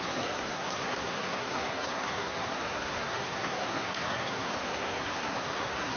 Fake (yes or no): yes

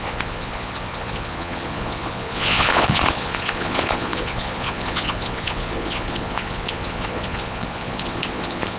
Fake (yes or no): yes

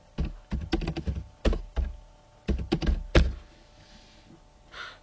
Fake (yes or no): no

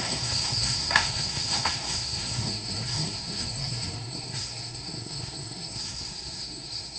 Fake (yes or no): yes